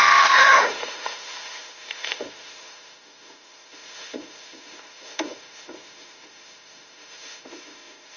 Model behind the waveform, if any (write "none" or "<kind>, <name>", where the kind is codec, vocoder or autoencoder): autoencoder, DAC-VAE